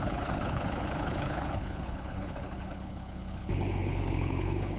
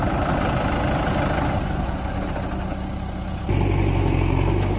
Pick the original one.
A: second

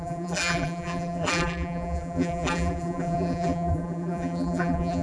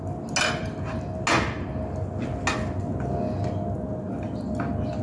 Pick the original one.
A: second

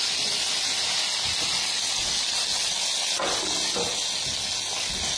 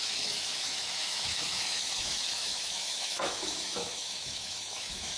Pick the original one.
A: first